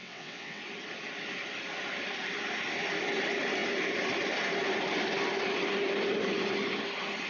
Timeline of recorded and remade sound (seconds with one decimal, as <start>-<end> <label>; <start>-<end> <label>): 0.0-0.6 remade; 0.6-7.3 recorded